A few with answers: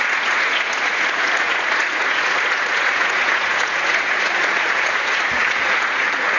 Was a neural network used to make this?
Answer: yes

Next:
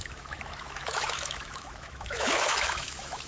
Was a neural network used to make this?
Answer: yes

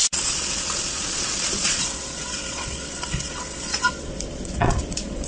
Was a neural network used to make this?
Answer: yes